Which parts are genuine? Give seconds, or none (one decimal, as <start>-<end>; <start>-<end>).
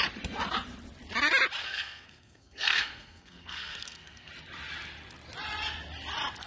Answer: 0.0-1.6; 4.3-6.5